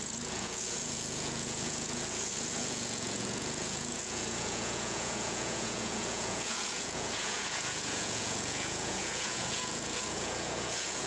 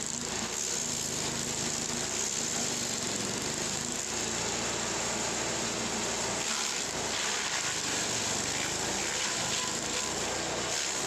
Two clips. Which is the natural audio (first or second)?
second